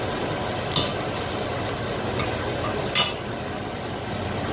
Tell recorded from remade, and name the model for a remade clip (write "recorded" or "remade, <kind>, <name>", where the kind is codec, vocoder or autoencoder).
recorded